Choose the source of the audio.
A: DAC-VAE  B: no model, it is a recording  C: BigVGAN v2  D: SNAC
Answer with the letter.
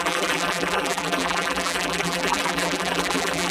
C